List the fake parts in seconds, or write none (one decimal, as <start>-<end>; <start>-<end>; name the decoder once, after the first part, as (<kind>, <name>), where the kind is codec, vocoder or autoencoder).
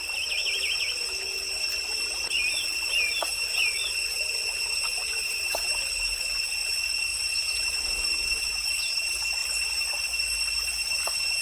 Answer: 5.0-5.8 (vocoder, BigVGAN v2)